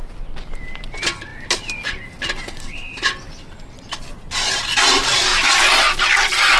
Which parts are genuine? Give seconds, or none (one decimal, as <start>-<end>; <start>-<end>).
0.0-1.3; 2.2-6.6